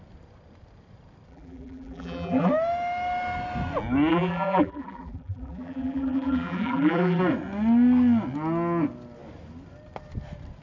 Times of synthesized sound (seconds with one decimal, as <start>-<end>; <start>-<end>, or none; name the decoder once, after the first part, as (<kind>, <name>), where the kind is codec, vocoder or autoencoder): 1.3-2.5 (vocoder, BigVGAN v2); 4.1-7.2